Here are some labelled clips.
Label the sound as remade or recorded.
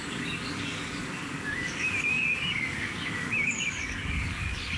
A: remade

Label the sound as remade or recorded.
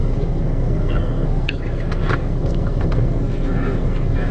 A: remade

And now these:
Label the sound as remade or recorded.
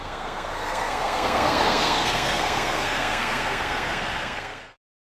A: remade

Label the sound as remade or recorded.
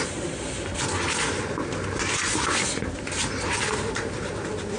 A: recorded